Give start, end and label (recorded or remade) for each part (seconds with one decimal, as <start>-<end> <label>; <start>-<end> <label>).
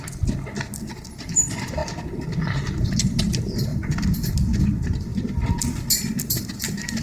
0.0-3.7 recorded; 3.7-4.3 remade; 4.3-5.1 recorded; 5.1-5.7 remade; 5.7-7.0 recorded